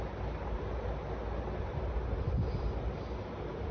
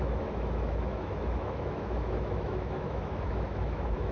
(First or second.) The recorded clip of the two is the first